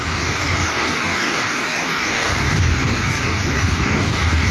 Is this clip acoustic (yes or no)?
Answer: no